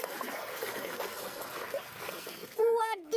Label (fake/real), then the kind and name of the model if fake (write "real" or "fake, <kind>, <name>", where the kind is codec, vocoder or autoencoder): fake, codec, SNAC